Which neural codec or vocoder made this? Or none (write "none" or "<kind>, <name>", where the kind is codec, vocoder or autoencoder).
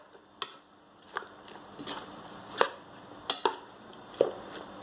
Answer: none